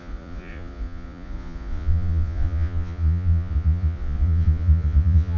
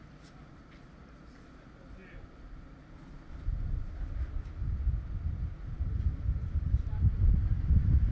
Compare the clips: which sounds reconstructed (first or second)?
first